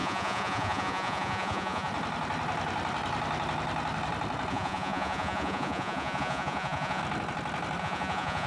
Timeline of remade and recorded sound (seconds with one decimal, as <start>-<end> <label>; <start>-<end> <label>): 0.0-1.9 remade; 1.9-4.5 recorded; 4.5-7.0 remade; 7.0-7.8 recorded; 7.8-8.5 remade